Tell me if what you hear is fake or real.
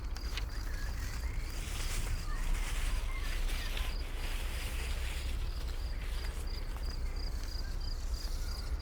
real